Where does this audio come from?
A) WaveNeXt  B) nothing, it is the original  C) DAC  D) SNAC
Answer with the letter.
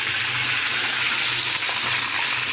B